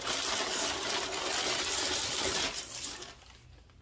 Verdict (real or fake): real